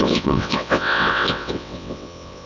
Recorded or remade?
remade